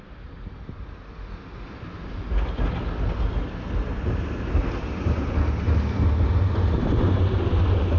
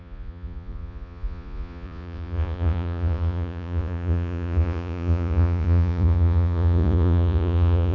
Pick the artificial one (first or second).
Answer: second